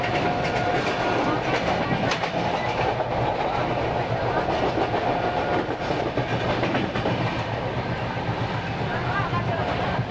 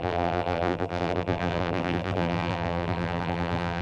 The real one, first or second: first